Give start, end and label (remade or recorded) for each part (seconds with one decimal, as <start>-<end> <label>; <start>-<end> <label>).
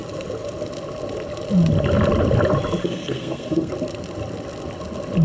0.0-2.8 recorded; 2.8-3.7 remade; 3.7-5.2 recorded